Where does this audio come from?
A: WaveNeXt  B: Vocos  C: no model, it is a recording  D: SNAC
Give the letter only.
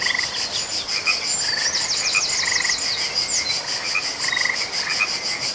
C